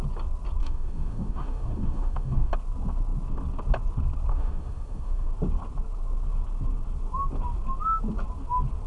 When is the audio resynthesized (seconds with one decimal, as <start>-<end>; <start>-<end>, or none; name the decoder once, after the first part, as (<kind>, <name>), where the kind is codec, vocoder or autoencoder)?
0.6-2.5 (autoencoder, DAC-VAE); 4.3-5.3